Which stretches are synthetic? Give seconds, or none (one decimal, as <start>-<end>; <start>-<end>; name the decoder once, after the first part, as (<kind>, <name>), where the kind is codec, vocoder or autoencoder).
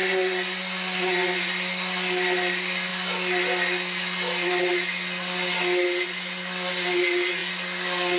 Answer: none